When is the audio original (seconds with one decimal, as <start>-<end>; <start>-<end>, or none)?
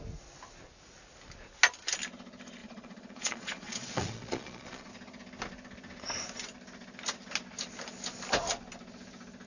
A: 0.0-2.6; 4.9-9.5